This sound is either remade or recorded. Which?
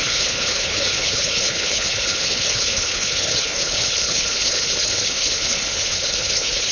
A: remade